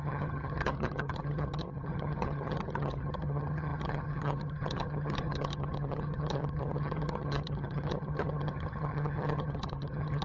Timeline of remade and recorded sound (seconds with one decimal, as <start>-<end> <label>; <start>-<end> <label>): 0.0-10.2 remade